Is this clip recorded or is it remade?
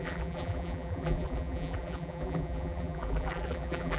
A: remade